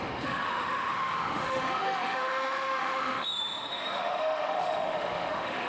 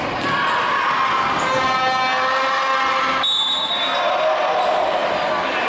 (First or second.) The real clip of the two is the second